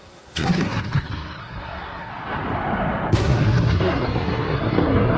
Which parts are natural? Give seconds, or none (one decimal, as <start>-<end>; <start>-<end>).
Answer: 2.1-3.1